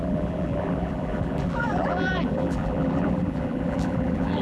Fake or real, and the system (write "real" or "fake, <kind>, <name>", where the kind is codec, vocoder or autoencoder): fake, vocoder, BigVGAN v2